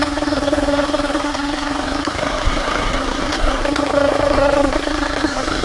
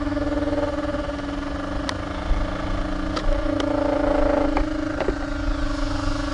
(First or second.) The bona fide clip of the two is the second